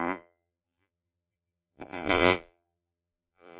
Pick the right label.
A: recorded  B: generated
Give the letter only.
B